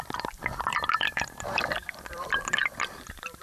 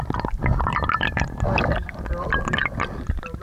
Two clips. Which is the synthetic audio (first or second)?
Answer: first